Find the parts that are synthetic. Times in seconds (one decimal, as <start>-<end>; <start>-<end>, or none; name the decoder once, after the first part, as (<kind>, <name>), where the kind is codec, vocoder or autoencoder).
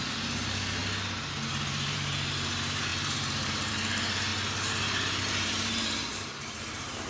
0.0-0.8 (vocoder, BigVGAN v2); 1.5-4.3; 5.2-7.1